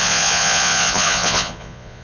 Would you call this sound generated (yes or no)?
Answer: yes